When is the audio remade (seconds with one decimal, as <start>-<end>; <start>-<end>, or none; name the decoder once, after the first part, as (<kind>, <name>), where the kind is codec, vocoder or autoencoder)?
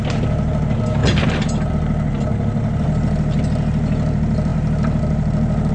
none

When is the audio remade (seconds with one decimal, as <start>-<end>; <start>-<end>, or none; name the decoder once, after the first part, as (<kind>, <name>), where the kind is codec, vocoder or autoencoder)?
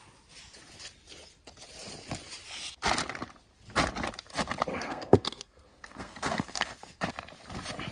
4.7-7.1 (codec, SNAC)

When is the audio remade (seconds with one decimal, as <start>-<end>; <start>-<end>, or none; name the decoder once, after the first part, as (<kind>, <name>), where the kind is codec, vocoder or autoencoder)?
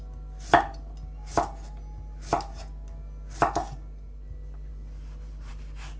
none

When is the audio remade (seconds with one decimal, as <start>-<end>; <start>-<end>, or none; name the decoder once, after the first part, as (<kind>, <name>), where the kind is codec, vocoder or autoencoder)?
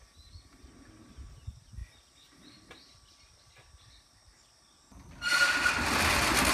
1.8-5.7 (vocoder, BigVGAN v2)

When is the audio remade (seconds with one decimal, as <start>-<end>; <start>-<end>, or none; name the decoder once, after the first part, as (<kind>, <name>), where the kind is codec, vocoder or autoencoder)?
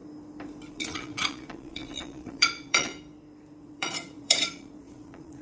0.7-2.9 (vocoder, Vocos); 3.6-5.4